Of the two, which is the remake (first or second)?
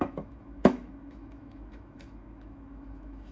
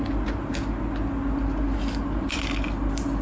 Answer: first